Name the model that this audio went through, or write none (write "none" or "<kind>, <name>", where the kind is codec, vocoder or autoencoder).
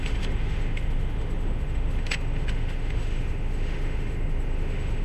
autoencoder, DAC-VAE